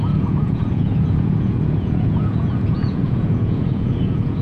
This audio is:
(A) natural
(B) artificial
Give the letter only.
B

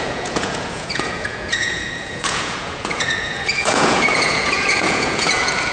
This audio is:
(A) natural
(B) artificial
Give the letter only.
B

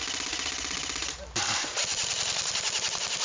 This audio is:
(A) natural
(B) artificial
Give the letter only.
A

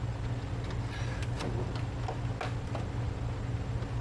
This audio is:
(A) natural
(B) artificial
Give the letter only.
A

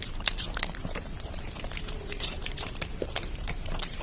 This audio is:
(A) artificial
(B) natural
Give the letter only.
A